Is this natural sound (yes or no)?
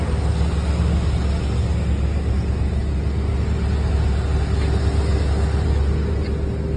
yes